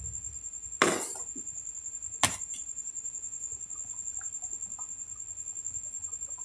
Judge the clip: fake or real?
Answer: real